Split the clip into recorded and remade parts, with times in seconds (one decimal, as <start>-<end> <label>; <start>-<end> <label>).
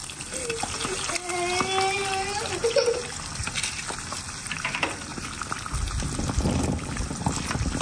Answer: 0.0-7.8 recorded